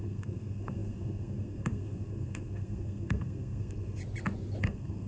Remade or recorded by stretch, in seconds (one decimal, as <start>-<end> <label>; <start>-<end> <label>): 0.0-4.0 remade; 4.0-4.6 recorded; 4.6-5.1 remade